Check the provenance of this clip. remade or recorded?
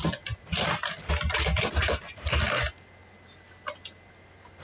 recorded